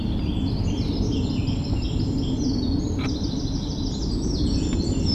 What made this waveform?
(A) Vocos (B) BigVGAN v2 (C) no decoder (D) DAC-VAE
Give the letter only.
C